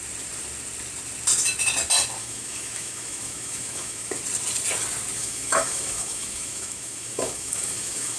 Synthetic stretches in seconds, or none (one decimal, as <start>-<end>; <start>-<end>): 2.2-4.2; 5.2-8.2